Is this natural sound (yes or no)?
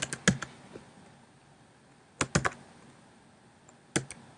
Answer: yes